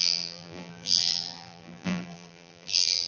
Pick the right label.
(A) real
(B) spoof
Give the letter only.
B